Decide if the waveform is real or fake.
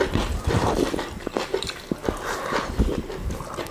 real